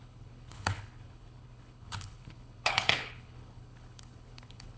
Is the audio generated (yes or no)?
yes